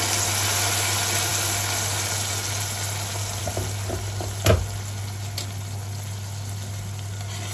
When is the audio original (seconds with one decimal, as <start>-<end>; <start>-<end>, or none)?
0.0-7.5